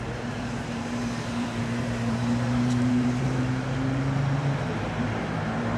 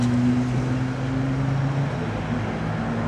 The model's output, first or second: first